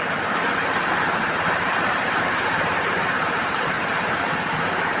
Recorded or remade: remade